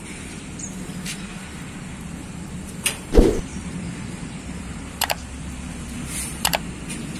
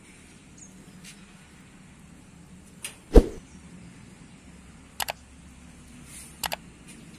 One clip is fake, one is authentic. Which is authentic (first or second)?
second